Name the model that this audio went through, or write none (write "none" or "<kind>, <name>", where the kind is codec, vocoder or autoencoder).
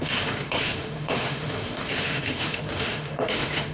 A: autoencoder, DAC-VAE